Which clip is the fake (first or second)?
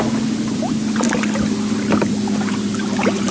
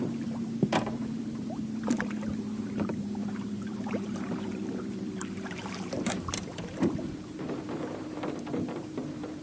second